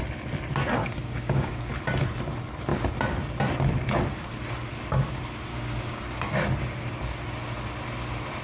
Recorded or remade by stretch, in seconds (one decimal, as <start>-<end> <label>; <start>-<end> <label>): 0.0-0.8 recorded; 0.8-1.7 remade; 1.7-5.5 recorded; 5.5-6.4 remade; 6.4-8.4 recorded